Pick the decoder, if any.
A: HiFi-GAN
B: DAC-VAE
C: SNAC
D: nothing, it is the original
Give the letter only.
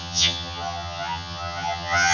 A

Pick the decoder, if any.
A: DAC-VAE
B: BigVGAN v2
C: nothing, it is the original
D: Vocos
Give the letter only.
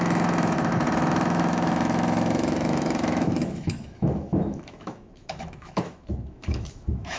A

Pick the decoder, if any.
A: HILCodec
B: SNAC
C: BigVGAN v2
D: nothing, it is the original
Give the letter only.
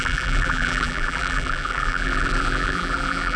C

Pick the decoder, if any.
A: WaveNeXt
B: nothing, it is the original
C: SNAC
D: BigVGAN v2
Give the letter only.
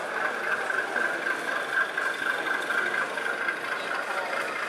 B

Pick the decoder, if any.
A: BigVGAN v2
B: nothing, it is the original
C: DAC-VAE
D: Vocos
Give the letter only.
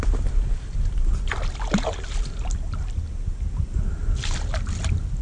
B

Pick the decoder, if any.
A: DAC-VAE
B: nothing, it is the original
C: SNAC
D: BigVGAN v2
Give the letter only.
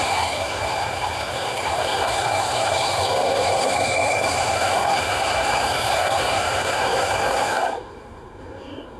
C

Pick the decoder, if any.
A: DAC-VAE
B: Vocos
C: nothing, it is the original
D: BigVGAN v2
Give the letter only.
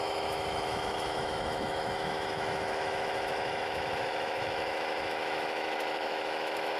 A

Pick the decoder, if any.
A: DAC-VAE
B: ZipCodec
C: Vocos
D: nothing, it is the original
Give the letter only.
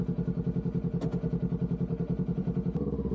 D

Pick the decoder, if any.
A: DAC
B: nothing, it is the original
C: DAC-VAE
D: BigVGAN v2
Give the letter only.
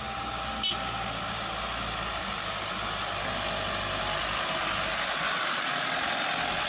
B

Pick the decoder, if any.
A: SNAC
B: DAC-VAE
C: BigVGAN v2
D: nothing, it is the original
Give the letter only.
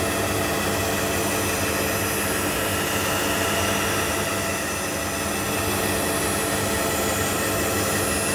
D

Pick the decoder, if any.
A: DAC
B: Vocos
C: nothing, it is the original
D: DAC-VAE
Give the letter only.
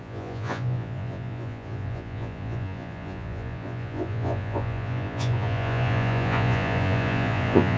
B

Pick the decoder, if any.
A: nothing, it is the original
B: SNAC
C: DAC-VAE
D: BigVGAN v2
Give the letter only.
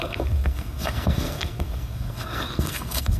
B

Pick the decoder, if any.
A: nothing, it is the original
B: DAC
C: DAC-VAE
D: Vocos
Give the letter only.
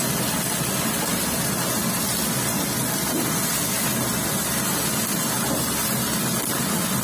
A